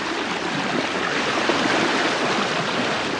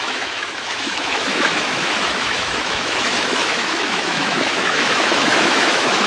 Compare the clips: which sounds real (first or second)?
first